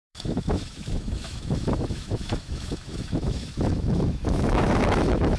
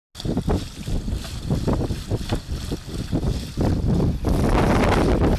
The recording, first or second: second